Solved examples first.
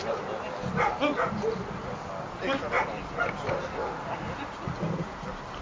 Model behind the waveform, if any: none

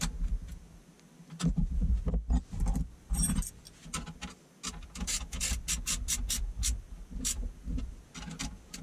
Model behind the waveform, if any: none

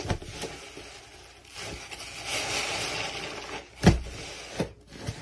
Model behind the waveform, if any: none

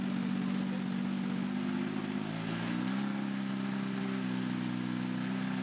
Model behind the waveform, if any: none